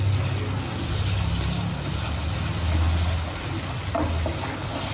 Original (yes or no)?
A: yes